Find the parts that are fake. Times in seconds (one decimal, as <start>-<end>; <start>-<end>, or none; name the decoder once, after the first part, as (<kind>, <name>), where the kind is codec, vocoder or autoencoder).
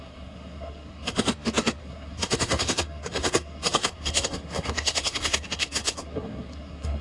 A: 0.0-1.3 (codec, SNAC); 1.8-7.0